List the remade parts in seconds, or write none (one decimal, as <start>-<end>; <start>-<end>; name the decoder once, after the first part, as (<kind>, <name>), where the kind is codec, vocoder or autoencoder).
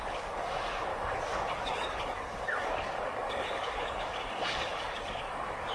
0.0-5.7 (codec, DAC)